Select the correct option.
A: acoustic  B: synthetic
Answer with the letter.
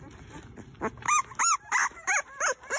A